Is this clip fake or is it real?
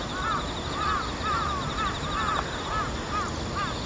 real